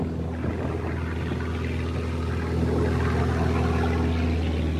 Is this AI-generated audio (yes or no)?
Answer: no